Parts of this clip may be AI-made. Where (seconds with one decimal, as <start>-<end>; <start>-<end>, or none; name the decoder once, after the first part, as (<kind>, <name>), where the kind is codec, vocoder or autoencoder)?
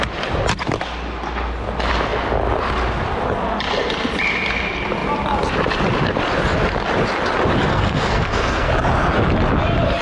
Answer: 7.7-8.7 (codec, SNAC)